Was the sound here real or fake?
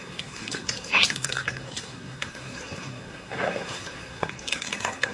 fake